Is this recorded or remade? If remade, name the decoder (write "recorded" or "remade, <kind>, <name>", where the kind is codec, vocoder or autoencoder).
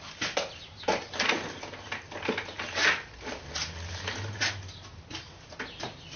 recorded